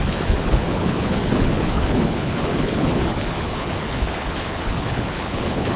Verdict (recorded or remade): remade